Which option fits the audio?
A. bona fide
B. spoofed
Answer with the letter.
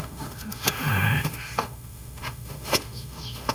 B